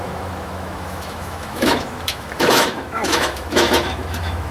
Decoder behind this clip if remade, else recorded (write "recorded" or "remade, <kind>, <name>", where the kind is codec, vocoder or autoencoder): remade, autoencoder, DAC-VAE